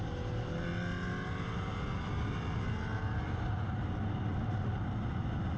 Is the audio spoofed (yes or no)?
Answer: no